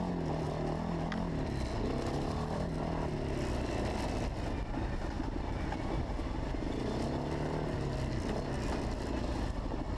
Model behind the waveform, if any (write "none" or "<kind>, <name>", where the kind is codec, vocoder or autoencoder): none